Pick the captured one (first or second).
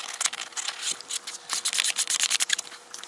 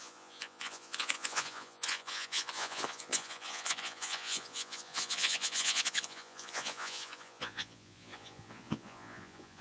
first